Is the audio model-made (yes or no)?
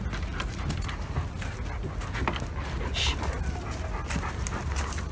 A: no